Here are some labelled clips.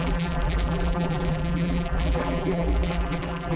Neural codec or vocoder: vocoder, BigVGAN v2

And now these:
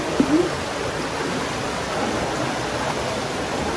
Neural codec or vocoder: vocoder, BigVGAN v2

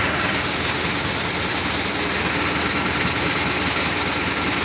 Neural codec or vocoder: none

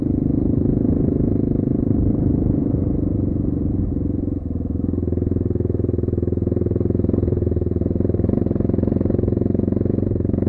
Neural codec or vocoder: none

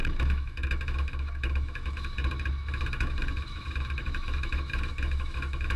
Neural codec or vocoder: autoencoder, DAC-VAE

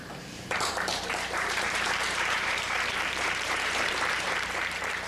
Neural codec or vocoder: vocoder, BigVGAN v2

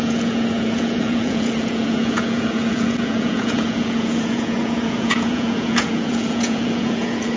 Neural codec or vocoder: vocoder, Vocos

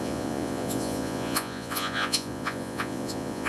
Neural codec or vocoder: vocoder, Vocos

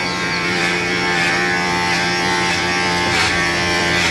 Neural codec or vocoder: vocoder, BigVGAN v2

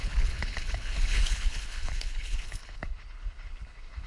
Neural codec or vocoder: codec, HILCodec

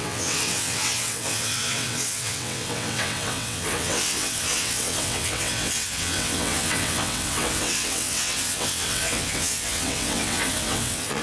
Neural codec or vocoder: vocoder, WaveNeXt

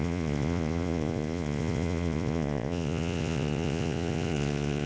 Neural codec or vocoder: vocoder, Vocos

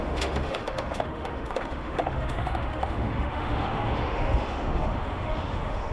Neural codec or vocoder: autoencoder, DAC-VAE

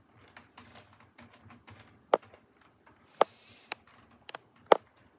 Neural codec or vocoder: none